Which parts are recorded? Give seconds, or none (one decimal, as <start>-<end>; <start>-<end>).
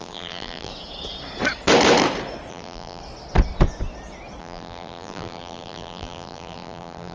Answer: 0.7-2.5; 3.0-4.4